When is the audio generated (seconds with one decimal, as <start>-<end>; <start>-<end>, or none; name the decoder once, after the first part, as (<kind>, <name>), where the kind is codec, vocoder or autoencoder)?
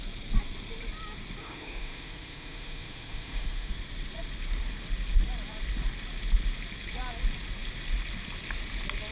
1.4-3.7 (autoencoder, DAC-VAE)